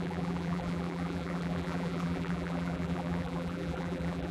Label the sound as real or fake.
fake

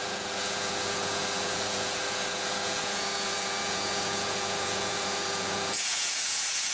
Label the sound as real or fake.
fake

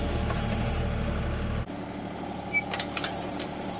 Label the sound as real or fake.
real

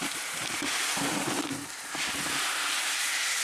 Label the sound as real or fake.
fake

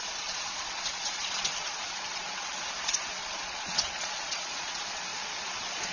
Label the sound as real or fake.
fake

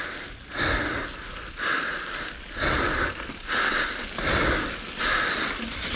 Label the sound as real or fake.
real